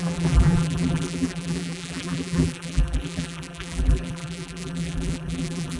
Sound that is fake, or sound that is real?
fake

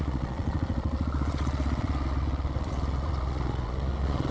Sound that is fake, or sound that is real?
fake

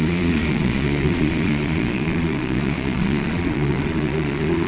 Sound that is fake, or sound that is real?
fake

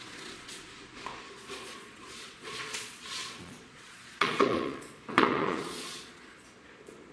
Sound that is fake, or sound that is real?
fake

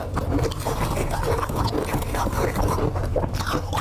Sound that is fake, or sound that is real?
real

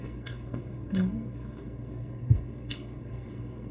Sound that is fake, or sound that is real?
fake